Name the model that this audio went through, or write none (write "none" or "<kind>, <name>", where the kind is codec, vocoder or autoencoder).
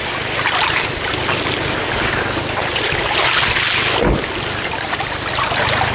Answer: none